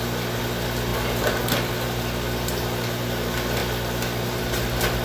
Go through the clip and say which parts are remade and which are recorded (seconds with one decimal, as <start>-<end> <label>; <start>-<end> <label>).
0.0-5.0 recorded

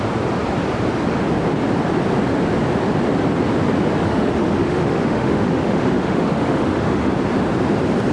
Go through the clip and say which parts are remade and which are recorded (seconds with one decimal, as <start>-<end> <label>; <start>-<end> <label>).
0.0-4.0 recorded; 4.0-7.1 remade; 7.1-8.1 recorded

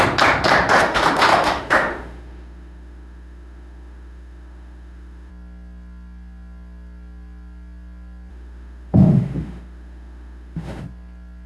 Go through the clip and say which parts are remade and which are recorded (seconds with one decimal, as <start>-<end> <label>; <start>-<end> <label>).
0.0-0.7 recorded; 0.7-5.3 remade; 5.3-8.3 recorded; 8.3-10.8 remade; 10.8-11.5 recorded

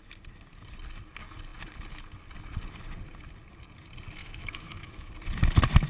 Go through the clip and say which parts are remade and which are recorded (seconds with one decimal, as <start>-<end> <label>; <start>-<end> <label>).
0.0-4.2 recorded; 4.2-5.1 remade; 5.1-5.9 recorded

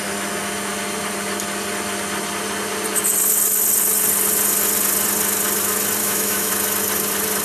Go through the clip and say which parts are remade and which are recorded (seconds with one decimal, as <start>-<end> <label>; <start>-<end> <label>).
0.0-6.0 recorded; 6.0-6.5 remade; 6.5-7.4 recorded

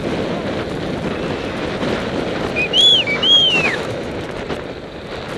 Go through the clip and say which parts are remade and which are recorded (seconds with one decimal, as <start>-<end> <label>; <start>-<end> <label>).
0.0-2.9 recorded; 2.9-4.1 remade; 4.1-5.4 recorded

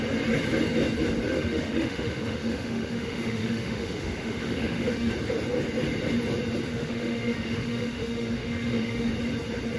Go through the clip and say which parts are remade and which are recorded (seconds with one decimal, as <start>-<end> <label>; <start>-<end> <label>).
0.0-1.3 recorded; 1.3-5.1 remade; 5.1-6.7 recorded; 6.7-9.1 remade; 9.1-9.8 recorded